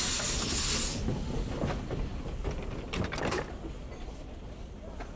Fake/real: real